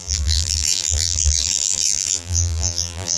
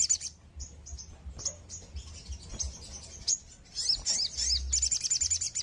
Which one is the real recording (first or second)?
second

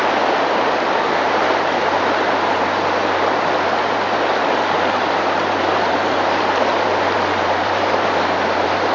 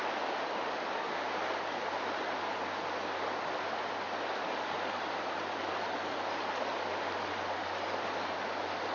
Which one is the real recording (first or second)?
second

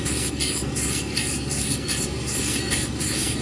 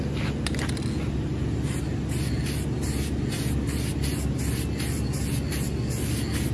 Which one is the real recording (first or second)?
second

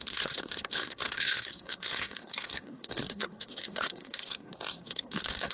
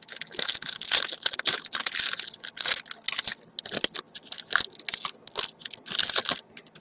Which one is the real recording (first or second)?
second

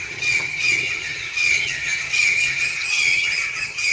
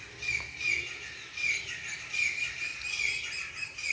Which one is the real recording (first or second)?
second